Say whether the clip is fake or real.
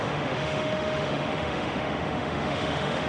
fake